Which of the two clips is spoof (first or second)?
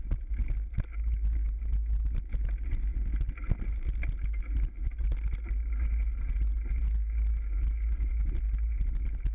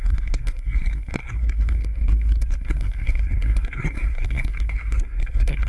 second